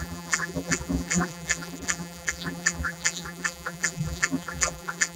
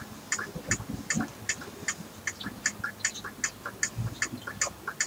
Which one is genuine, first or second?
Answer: second